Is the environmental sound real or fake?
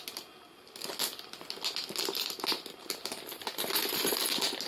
real